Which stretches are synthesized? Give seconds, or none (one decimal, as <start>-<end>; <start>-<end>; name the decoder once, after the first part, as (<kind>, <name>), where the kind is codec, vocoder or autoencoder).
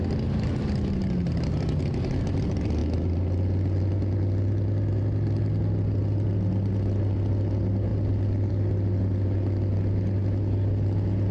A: none